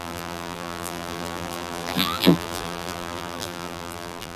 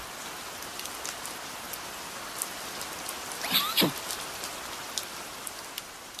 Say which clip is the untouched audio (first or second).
second